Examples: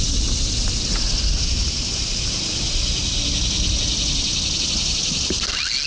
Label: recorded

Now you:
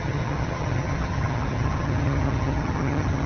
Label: remade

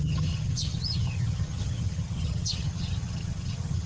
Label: remade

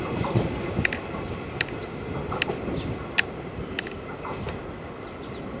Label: recorded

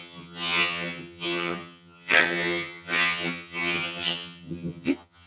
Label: remade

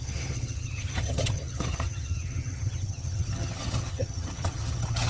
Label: remade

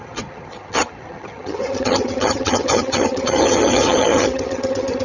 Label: remade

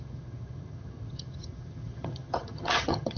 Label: remade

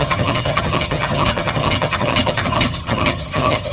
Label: remade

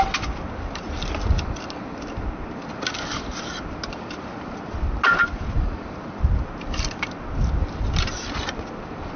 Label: recorded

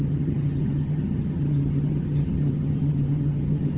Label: remade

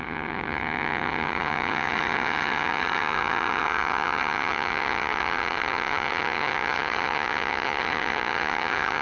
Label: remade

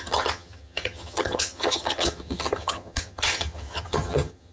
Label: remade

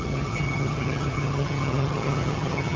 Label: remade